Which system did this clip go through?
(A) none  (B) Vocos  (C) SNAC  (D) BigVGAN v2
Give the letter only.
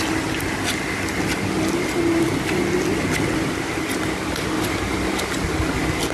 A